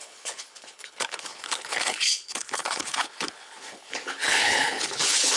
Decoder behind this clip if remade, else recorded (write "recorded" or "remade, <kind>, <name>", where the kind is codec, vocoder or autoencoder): remade, codec, HILCodec